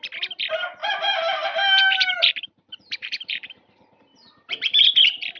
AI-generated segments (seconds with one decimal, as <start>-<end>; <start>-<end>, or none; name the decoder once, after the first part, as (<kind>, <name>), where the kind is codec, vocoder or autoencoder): 0.8-4.0 (vocoder, BigVGAN v2)

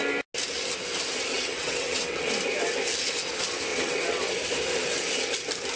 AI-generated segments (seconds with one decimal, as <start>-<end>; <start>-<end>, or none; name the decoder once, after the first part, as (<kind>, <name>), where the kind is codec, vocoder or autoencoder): 1.3-2.3 (vocoder, WaveNeXt); 3.7-4.2

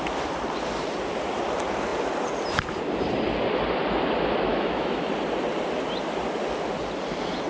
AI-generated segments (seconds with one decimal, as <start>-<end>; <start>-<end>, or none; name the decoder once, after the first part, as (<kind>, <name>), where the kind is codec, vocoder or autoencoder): 4.5-5.1 (autoencoder, DAC-VAE)

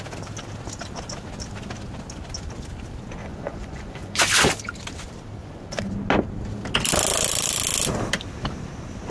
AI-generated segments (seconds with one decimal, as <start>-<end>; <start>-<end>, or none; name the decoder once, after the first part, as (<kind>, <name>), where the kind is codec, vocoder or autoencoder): 3.2-4.2 (vocoder, Vocos); 5.4-5.9

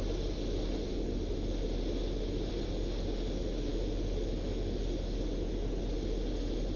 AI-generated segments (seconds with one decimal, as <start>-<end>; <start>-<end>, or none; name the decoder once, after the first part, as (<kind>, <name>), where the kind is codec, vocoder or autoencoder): none

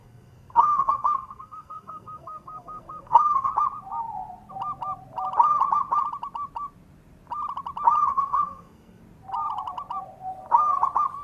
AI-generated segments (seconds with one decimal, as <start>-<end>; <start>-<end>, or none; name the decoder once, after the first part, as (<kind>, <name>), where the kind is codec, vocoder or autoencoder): 0.0-3.5 (codec, SNAC); 8.1-9.0

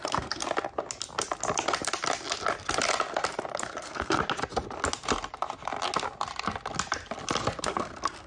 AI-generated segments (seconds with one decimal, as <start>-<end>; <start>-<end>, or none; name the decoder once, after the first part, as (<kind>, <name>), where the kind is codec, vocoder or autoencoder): 0.0-0.4 (codec, SNAC); 3.6-4.2; 7.6-8.3